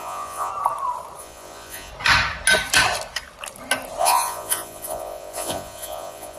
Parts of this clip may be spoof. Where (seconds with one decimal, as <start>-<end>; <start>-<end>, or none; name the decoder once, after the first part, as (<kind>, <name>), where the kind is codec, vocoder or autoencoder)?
0.0-0.5 (vocoder, Vocos); 1.2-1.9; 4.0-6.4